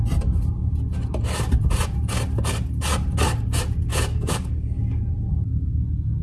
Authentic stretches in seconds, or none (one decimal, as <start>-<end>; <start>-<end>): 0.0-3.9; 5.0-6.2